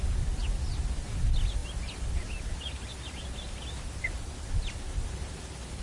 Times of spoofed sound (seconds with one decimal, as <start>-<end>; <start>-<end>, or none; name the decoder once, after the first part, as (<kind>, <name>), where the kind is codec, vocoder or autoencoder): none